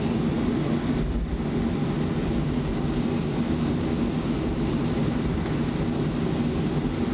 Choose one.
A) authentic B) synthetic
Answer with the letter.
A